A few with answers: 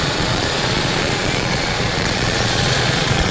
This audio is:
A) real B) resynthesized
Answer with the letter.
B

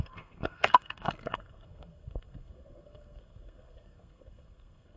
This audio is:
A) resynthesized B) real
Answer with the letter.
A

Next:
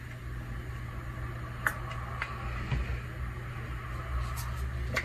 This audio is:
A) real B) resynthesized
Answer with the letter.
A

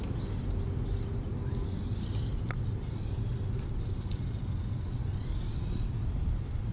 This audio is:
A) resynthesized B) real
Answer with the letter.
B